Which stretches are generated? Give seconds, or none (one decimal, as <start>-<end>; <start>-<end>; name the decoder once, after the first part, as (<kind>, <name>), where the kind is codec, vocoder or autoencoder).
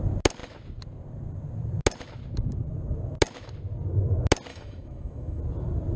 4.5-5.4 (autoencoder, DAC-VAE)